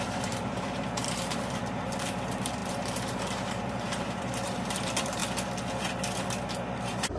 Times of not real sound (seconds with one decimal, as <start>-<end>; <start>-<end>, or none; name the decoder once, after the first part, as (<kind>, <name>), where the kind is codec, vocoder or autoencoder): 0.0-5.2 (vocoder, BigVGAN v2); 6.4-7.2